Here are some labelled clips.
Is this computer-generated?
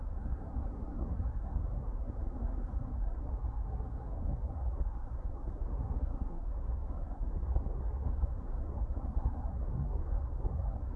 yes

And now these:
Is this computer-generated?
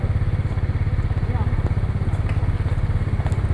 no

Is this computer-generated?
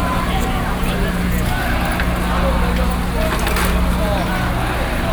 no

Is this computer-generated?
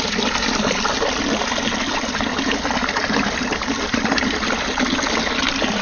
no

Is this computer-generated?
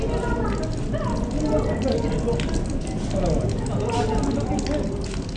no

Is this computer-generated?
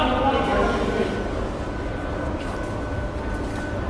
no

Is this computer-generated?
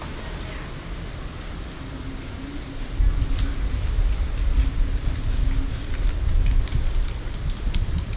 no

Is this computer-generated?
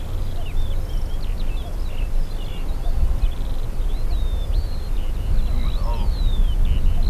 no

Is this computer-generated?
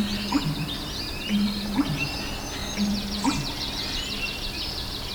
no